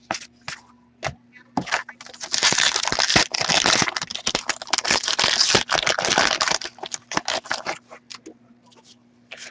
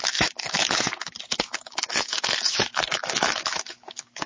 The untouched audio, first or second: first